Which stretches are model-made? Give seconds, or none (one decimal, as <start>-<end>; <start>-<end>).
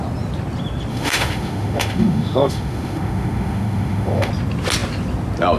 0.9-4.3